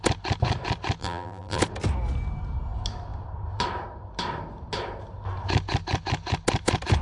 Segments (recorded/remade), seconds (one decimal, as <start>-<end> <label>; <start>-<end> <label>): 0.0-1.0 recorded; 1.0-1.6 remade; 1.6-7.0 recorded